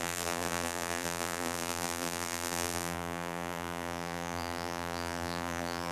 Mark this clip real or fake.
fake